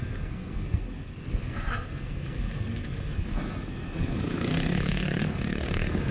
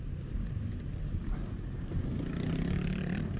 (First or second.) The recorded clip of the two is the second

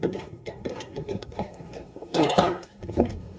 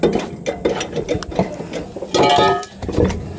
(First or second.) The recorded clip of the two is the second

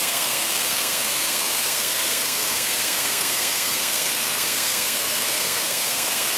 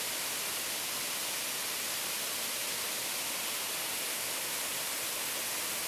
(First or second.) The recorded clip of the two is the second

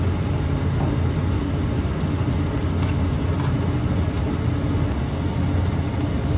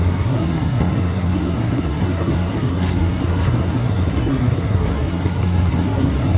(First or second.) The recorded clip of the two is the first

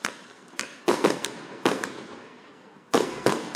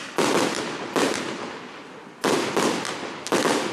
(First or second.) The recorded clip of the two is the second